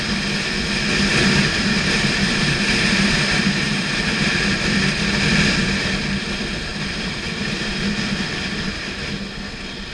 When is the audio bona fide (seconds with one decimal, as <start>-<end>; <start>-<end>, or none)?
0.0-1.1; 4.0-6.7; 8.1-9.9